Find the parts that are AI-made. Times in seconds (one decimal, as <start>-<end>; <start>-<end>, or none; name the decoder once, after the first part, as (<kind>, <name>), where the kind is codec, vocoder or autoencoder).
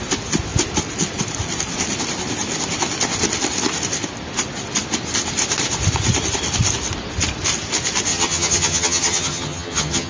8.1-10.1 (vocoder, HiFi-GAN)